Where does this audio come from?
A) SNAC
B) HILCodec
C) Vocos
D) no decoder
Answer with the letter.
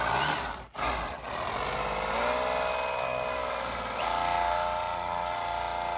D